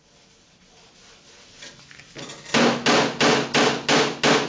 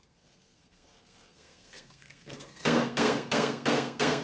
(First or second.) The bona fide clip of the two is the first